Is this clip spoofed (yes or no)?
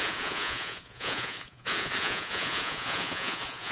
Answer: yes